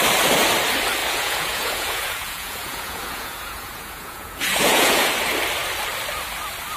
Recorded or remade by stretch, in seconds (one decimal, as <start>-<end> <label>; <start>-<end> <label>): 0.0-1.0 recorded; 1.0-5.1 remade; 5.1-6.8 recorded